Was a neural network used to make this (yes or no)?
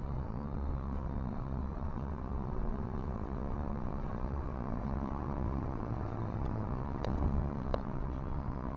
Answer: yes